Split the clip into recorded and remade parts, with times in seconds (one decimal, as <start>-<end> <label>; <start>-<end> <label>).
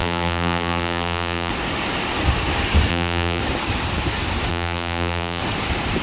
0.0-1.5 remade; 1.5-2.9 recorded; 2.9-3.4 remade; 3.4-4.5 recorded; 4.5-5.4 remade; 5.4-6.0 recorded